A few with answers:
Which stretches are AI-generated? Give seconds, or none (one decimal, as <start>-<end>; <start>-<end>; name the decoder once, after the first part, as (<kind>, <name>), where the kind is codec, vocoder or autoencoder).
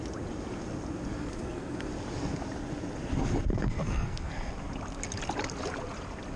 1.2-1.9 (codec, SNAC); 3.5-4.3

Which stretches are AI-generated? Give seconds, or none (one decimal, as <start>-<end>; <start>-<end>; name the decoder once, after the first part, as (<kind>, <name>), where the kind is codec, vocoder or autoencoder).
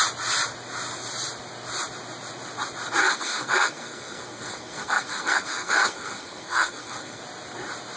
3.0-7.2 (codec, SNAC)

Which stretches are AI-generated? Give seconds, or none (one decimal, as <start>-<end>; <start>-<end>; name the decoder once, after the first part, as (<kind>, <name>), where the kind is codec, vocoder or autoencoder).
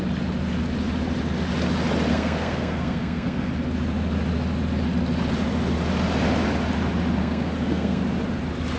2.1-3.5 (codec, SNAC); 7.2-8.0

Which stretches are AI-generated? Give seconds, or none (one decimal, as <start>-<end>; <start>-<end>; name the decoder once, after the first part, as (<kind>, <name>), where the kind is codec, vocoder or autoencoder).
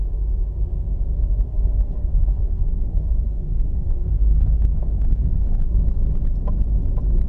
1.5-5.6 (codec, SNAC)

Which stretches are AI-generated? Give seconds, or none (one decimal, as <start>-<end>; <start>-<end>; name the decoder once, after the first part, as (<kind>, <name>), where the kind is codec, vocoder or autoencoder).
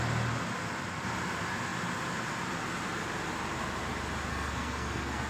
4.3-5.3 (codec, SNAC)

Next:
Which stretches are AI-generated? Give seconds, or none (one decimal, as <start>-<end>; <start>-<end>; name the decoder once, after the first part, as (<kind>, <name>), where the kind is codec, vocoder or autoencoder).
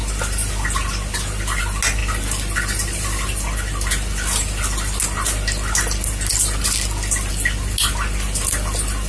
none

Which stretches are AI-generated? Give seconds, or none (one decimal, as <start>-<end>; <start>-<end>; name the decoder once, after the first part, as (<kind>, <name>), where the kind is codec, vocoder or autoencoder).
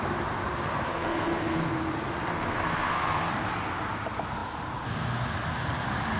0.9-1.7 (codec, SNAC); 2.3-3.3